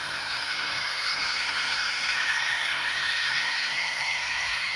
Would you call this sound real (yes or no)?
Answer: no